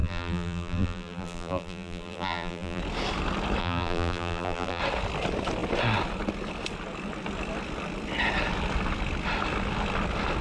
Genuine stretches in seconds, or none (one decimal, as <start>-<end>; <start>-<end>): 2.8-3.6; 4.8-10.4